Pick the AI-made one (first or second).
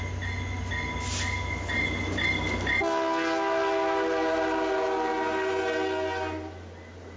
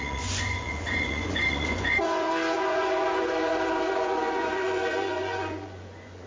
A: second